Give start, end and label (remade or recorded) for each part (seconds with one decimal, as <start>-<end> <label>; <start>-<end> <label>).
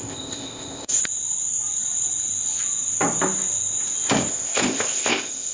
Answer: 0.0-1.0 remade; 1.0-4.3 recorded; 4.3-5.5 remade